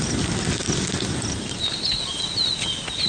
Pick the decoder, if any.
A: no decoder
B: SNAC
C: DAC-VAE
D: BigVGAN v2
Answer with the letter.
A